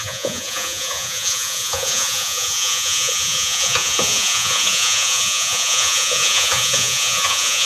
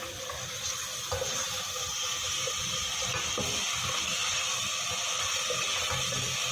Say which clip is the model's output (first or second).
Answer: first